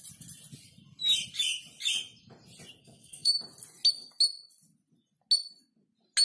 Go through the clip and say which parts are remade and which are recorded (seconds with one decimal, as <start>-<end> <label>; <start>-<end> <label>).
0.0-2.8 recorded; 2.8-3.4 remade; 3.4-6.2 recorded